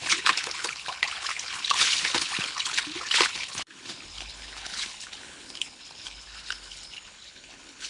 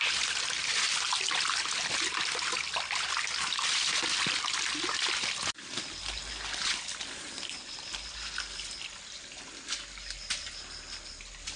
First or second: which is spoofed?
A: first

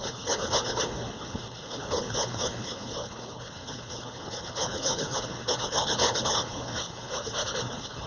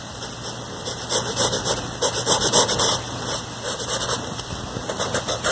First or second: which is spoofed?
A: first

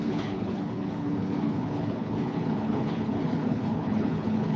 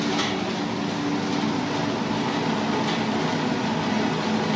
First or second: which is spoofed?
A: first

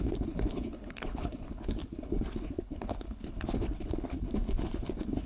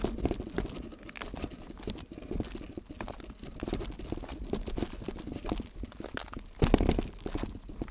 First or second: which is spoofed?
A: first